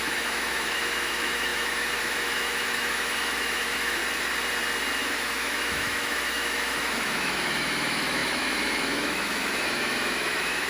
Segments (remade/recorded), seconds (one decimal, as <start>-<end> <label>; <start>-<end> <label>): 0.0-4.0 remade; 4.0-5.0 recorded; 5.0-10.7 remade